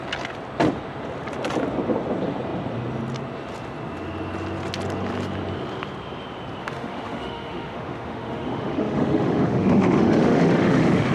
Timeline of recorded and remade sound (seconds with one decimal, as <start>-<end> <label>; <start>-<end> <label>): 0.0-6.6 recorded; 6.6-11.1 remade